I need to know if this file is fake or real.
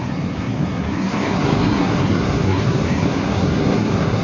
fake